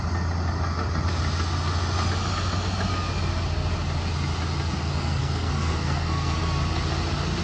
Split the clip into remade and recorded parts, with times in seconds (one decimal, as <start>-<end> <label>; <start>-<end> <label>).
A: 0.0-4.8 recorded; 4.8-6.4 remade; 6.4-7.4 recorded